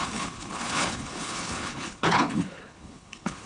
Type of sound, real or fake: fake